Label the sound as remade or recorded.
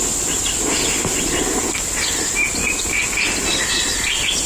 recorded